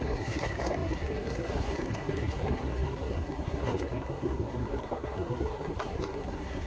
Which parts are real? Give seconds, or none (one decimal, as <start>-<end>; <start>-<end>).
none